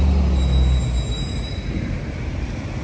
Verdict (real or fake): real